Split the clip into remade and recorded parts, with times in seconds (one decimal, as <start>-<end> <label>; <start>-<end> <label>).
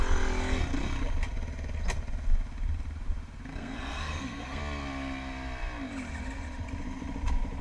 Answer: 0.0-3.5 recorded; 3.5-4.6 remade; 4.6-7.6 recorded